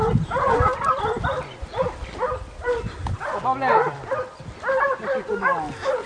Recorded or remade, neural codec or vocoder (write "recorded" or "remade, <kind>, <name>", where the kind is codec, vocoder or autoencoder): recorded